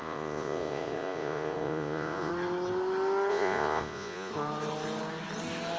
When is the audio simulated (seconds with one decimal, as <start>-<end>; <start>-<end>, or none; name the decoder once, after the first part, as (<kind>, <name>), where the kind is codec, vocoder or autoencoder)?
0.0-2.3 (vocoder, Vocos); 3.3-4.3